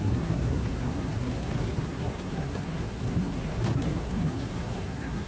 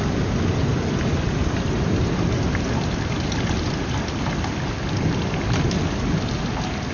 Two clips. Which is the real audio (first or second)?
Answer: second